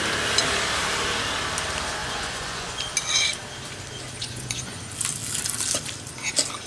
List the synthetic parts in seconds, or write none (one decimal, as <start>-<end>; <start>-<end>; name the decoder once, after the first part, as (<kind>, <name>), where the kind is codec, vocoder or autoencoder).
2.0-2.8 (vocoder, Vocos); 4.2-4.8